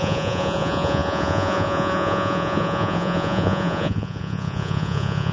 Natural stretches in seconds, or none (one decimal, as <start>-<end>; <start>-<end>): none